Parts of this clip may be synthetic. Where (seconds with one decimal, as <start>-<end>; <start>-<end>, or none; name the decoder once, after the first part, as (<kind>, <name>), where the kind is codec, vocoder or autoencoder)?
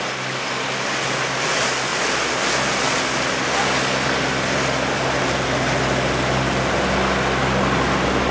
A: none